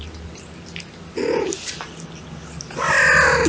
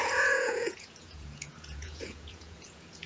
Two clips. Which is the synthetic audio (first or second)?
second